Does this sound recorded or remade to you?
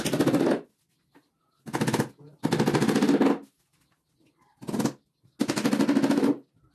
recorded